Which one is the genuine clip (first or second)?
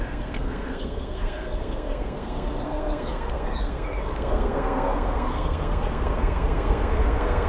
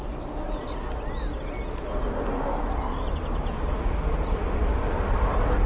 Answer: second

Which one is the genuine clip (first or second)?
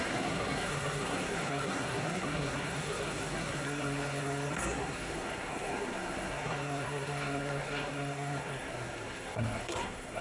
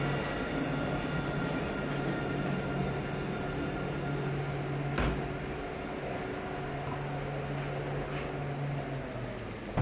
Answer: second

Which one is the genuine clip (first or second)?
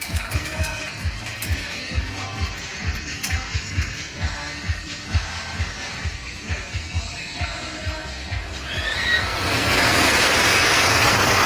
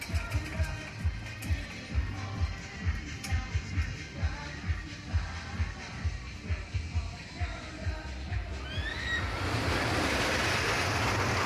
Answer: second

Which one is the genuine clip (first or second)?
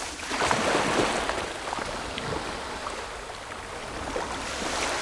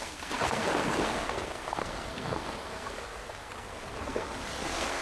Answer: first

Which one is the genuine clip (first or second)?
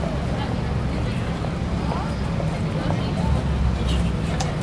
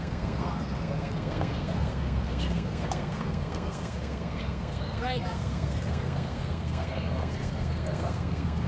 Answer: first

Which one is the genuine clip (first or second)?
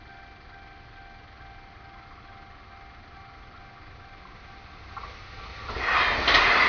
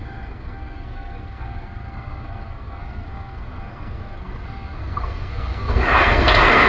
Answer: first